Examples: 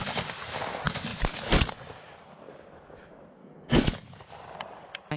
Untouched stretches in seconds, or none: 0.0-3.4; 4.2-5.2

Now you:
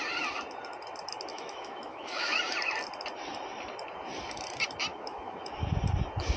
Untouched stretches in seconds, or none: 0.0-1.3; 2.4-4.9; 5.4-6.4